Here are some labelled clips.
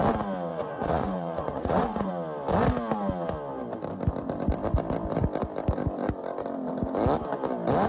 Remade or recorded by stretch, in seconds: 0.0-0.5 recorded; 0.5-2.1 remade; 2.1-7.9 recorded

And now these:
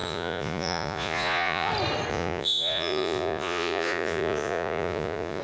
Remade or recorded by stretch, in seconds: 0.0-1.7 remade; 1.7-2.1 recorded; 2.1-5.4 remade

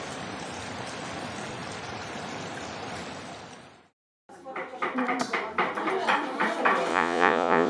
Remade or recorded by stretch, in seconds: 0.0-6.9 recorded; 6.9-7.7 remade

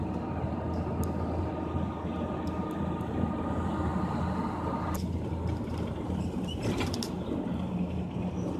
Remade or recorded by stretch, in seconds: 0.0-8.6 recorded